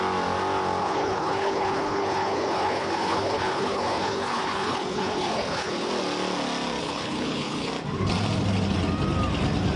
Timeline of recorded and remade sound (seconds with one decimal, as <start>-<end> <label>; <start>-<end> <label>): 0.0-0.8 recorded; 0.8-5.9 remade; 5.9-6.8 recorded; 6.8-7.7 remade; 7.7-9.8 recorded